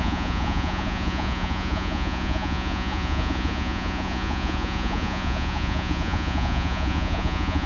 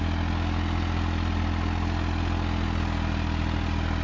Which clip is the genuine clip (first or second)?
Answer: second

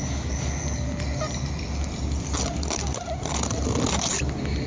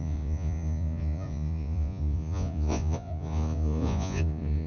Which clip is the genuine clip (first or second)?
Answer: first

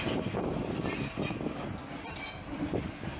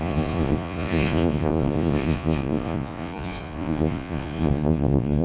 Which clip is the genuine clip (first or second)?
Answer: first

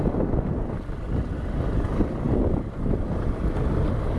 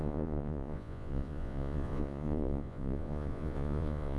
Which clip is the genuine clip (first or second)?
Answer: first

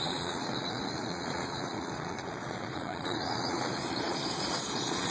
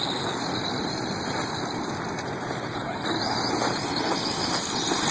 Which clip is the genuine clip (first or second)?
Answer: second